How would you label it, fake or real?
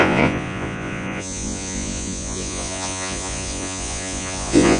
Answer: fake